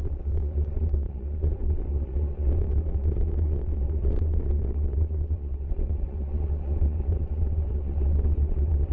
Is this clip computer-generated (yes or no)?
yes